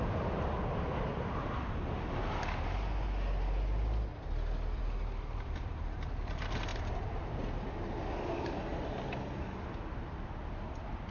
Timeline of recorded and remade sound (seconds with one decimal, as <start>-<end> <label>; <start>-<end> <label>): 0.0-11.1 recorded